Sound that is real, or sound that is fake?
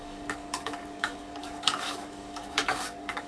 fake